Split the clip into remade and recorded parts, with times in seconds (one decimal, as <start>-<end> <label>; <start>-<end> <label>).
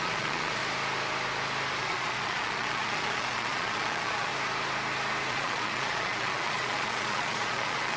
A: 0.0-0.6 remade; 0.6-1.8 recorded; 1.8-4.3 remade; 4.3-5.3 recorded; 5.3-8.0 remade